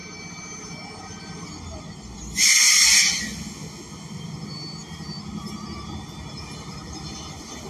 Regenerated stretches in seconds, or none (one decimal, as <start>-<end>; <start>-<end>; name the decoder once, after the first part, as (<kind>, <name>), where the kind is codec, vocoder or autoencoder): none